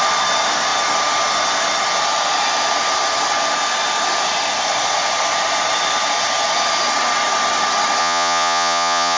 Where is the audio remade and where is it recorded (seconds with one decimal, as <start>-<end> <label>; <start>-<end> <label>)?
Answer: 0.0-8.0 recorded; 8.0-9.2 remade